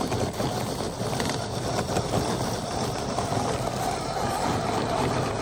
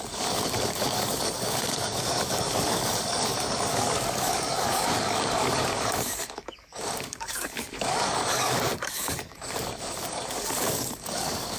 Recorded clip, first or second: first